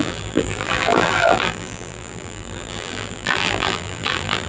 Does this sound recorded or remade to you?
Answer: remade